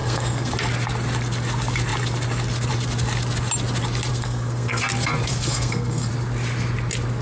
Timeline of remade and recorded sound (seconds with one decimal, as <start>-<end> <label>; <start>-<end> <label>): 0.0-0.5 remade; 0.5-4.1 recorded; 4.1-4.8 remade; 4.8-5.3 recorded; 5.3-6.1 remade; 6.1-7.2 recorded